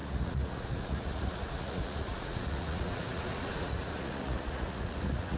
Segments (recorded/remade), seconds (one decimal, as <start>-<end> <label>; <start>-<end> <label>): 0.0-5.4 remade

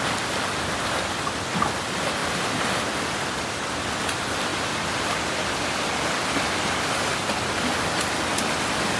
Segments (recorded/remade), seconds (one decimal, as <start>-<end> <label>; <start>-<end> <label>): 0.0-9.0 recorded

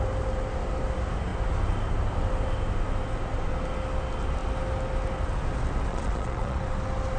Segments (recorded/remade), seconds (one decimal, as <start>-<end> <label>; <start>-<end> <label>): 0.0-5.9 recorded; 5.9-6.6 remade; 6.6-7.2 recorded